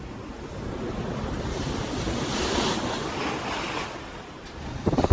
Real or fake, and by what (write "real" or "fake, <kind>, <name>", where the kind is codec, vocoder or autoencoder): real